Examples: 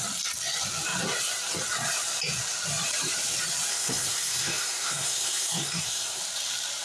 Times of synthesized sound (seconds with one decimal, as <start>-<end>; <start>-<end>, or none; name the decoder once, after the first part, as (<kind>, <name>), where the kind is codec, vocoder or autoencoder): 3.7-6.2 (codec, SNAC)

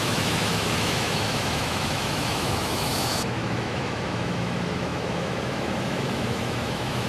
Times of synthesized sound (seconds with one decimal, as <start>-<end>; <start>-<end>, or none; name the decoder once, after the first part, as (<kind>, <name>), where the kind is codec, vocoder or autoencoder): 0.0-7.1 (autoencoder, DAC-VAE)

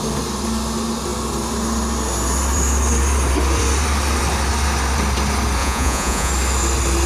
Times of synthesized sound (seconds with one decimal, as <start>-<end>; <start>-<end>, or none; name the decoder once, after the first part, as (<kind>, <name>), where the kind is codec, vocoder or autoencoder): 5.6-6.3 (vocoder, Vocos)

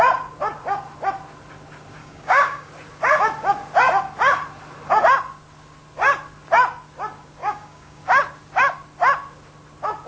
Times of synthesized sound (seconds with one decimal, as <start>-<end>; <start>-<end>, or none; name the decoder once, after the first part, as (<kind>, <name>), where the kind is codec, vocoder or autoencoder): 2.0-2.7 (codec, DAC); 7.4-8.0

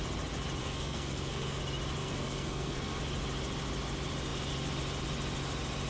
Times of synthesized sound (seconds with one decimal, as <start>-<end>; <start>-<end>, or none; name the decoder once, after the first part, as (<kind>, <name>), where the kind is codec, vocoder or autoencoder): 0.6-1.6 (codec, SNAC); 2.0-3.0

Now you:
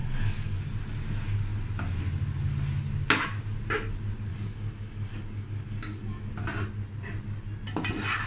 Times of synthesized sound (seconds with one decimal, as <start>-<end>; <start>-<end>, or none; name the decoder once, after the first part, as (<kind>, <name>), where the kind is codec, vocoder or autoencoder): 0.0-0.6 (codec, DAC); 4.3-6.3

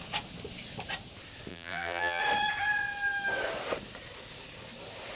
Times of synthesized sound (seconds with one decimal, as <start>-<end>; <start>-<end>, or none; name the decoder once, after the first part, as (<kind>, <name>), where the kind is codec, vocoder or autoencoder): 1.5-2.2 (vocoder, BigVGAN v2)